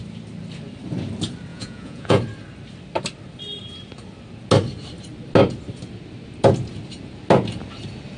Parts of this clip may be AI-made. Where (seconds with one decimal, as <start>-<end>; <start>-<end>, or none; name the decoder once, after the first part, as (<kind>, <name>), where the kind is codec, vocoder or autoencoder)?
1.5-2.2 (vocoder, Vocos)